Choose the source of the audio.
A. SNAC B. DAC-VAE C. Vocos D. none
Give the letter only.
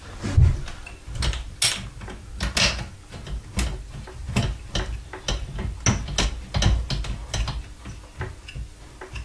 D